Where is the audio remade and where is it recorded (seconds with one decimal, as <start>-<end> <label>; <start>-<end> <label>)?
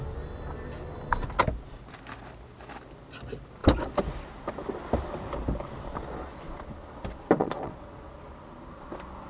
0.0-7.4 recorded; 7.4-8.1 remade; 8.1-9.3 recorded